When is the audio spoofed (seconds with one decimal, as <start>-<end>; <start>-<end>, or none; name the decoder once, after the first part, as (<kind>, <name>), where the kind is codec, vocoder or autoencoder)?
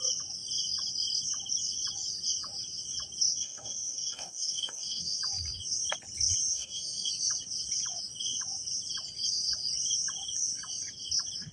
3.3-5.2 (codec, DAC); 6.5-7.1